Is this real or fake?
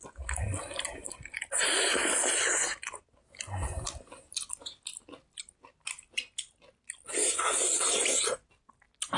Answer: real